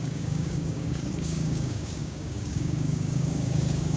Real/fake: fake